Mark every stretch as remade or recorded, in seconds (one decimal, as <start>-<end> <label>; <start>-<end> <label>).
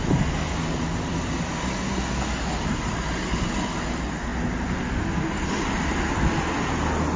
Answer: 0.0-7.2 recorded